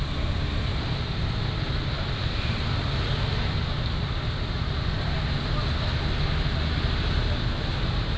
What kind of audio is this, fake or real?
real